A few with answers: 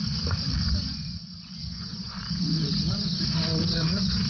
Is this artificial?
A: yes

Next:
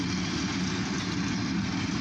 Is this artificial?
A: no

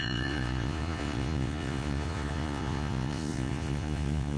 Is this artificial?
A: yes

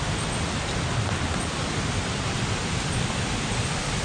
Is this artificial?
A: no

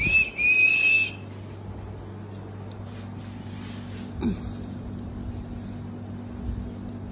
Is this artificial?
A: no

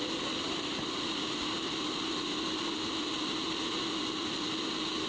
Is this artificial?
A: no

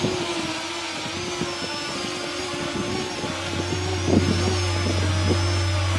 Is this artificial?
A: no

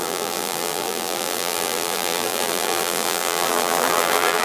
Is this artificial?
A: yes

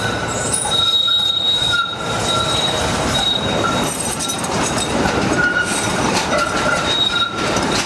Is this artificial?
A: yes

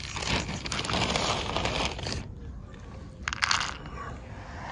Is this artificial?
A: no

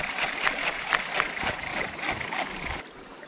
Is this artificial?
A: no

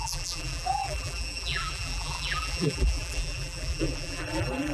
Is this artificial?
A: yes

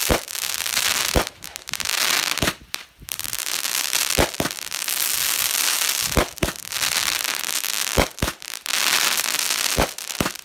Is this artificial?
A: yes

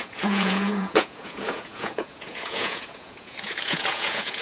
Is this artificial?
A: yes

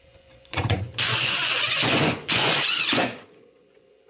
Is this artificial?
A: yes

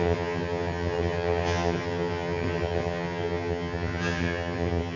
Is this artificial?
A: yes